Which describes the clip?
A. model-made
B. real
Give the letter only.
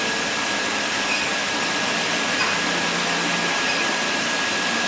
B